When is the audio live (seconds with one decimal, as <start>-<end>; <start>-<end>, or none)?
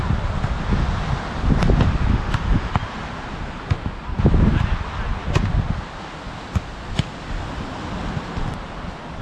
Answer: 0.0-2.1; 2.7-9.2